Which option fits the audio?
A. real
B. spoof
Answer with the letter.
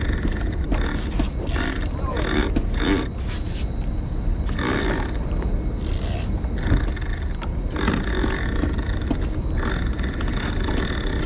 A